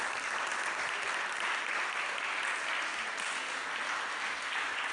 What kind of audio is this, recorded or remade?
recorded